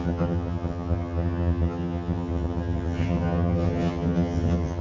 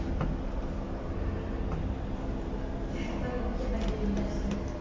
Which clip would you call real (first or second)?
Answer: second